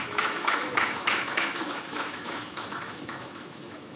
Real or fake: fake